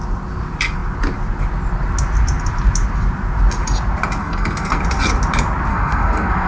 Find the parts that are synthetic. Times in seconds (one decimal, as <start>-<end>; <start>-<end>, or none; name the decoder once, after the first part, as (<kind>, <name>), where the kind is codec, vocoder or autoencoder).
4.2-4.8 (codec, SNAC); 5.7-6.5